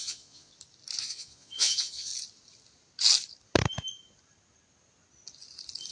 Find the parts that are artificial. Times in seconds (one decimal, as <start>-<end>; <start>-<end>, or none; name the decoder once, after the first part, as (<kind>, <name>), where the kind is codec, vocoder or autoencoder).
0.0-0.5 (vocoder, Vocos); 1.0-2.1